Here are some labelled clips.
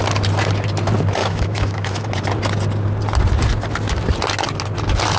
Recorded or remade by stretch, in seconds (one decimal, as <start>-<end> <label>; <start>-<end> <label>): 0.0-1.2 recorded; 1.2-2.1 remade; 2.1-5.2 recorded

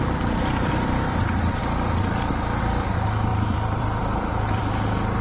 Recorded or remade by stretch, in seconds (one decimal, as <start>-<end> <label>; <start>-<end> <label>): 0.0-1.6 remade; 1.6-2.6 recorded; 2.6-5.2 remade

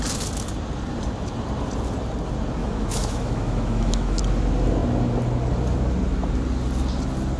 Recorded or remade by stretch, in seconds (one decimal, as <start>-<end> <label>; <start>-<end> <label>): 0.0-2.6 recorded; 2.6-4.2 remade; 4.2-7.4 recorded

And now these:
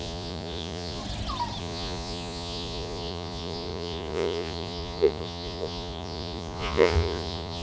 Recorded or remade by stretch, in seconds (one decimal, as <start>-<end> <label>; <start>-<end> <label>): 0.0-1.0 remade; 1.0-1.6 recorded; 1.6-7.6 remade

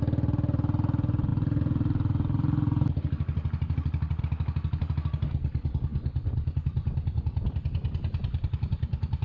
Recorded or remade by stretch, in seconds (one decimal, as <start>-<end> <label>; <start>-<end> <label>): 0.0-9.2 recorded

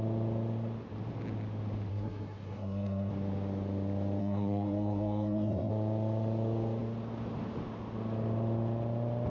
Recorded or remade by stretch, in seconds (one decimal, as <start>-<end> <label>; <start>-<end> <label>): 0.0-1.9 recorded; 1.9-3.1 remade; 3.1-4.2 recorded; 4.2-5.7 remade; 5.7-9.3 recorded